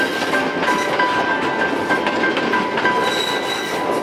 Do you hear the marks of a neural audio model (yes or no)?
no